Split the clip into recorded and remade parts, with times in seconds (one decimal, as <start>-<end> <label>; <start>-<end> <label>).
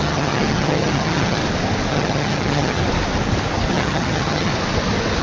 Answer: 0.0-1.4 remade; 1.4-1.9 recorded; 1.9-2.8 remade; 2.8-3.7 recorded; 3.7-4.5 remade; 4.5-5.2 recorded